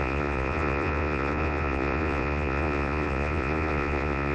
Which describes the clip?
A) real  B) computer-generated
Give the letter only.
B